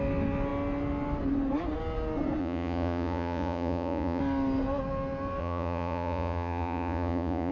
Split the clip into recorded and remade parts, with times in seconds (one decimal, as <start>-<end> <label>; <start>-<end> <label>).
0.0-2.4 recorded; 2.4-4.2 remade; 4.2-5.4 recorded; 5.4-7.5 remade

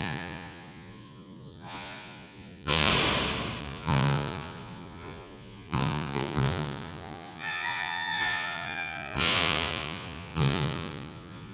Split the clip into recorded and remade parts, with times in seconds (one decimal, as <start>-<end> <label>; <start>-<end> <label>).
0.0-2.9 remade; 2.9-3.6 recorded; 3.6-11.5 remade

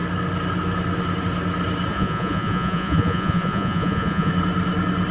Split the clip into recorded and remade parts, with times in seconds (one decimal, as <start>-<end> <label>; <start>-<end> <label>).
0.0-1.9 recorded; 1.9-4.3 remade; 4.3-5.1 recorded

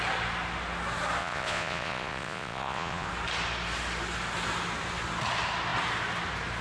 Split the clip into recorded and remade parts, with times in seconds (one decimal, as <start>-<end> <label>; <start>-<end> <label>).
0.0-1.2 recorded; 1.2-3.1 remade; 3.1-6.6 recorded